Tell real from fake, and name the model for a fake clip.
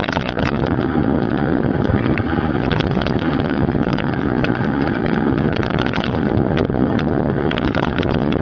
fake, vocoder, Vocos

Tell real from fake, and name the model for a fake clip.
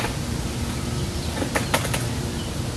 real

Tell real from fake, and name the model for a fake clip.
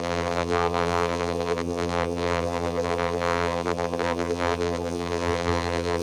fake, vocoder, BigVGAN v2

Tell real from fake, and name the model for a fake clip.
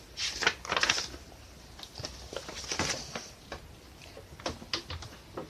real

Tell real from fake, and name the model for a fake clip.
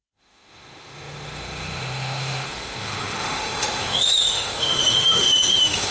fake, autoencoder, DAC-VAE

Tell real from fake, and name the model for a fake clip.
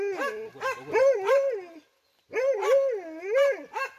real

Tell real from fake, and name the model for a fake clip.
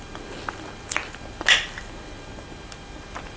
real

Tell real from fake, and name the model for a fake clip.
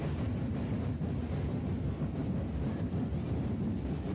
real